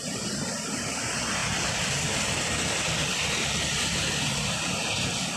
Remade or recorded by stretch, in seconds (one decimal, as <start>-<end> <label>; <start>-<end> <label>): 0.0-5.4 recorded